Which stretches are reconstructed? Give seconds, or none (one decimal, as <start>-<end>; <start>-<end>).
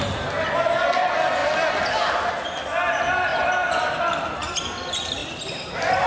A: 1.4-2.3; 3.3-4.0; 5.2-6.1